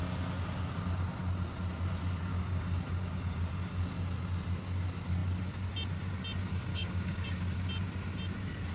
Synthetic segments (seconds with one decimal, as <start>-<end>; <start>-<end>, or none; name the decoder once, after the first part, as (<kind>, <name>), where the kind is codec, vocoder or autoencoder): 2.3-3.4 (codec, DAC); 6.7-7.3